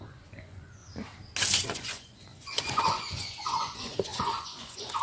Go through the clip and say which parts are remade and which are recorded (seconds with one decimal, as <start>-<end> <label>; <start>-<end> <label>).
0.0-0.8 remade; 0.8-1.5 recorded; 1.5-5.0 remade